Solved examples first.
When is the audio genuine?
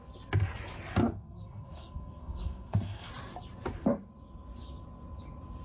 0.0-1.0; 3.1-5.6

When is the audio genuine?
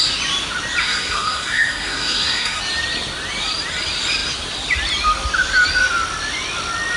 0.0-0.8; 2.6-7.0